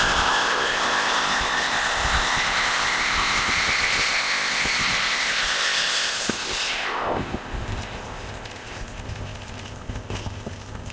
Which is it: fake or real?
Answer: fake